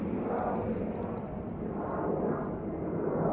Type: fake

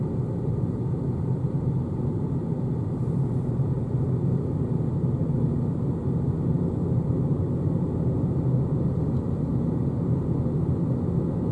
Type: real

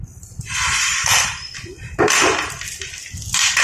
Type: fake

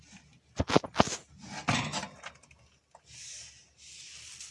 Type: real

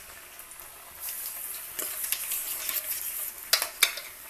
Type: real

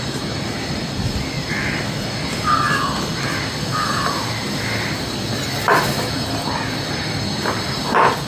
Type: real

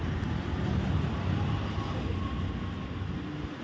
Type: real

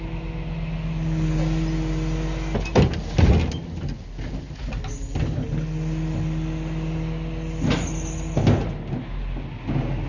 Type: real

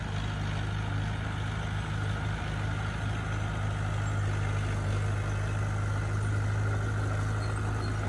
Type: real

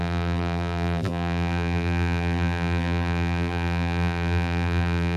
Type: fake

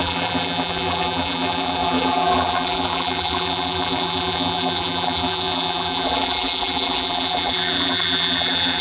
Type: fake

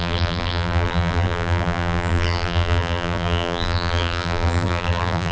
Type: fake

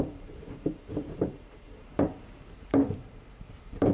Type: fake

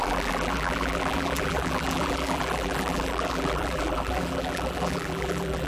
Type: fake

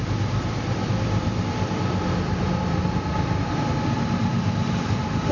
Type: fake